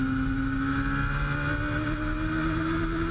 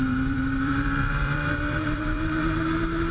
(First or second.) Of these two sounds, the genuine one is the first